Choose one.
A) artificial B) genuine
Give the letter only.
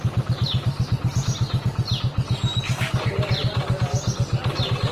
B